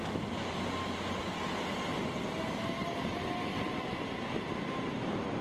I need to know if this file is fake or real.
real